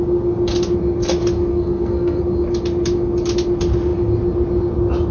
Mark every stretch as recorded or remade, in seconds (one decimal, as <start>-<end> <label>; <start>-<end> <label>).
0.0-1.5 recorded; 1.5-2.2 remade; 2.2-5.1 recorded